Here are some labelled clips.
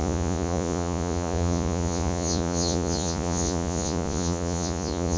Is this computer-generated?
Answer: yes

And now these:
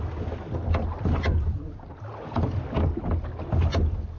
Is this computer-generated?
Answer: no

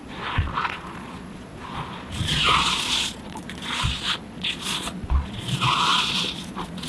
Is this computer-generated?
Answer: yes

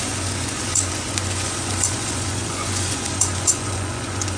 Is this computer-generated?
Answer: yes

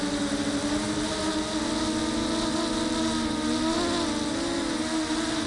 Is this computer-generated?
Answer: no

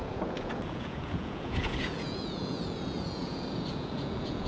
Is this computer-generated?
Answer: yes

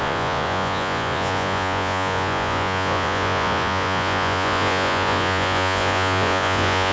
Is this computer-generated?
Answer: yes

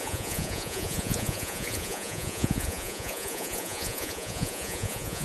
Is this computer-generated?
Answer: yes